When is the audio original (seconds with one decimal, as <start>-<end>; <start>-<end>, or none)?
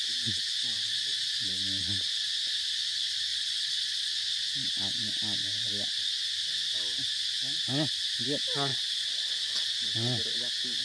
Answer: 0.0-3.3; 4.1-8.7; 9.4-10.8